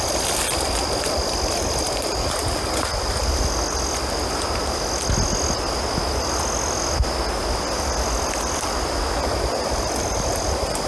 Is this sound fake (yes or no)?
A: no